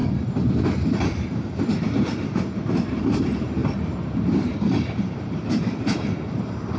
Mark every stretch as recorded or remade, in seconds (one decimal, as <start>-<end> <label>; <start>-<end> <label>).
0.0-1.3 recorded; 1.3-6.8 remade

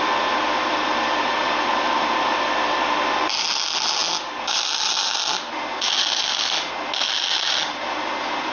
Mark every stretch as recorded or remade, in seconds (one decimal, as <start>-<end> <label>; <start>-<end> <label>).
0.0-8.5 recorded

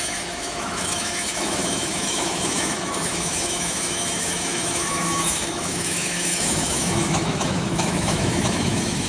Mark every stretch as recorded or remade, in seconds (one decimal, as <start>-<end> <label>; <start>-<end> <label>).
0.0-9.1 remade

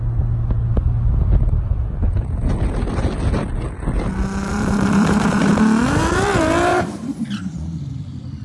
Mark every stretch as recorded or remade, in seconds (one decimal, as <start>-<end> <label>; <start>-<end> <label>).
0.0-4.5 recorded; 4.5-5.5 remade; 5.5-6.7 recorded; 6.7-7.2 remade; 7.2-8.4 recorded